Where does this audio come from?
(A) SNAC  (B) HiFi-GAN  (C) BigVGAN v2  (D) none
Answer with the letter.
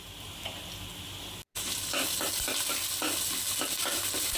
D